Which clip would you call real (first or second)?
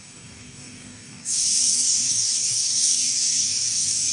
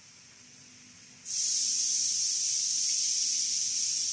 second